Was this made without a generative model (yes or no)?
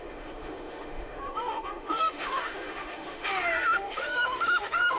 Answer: no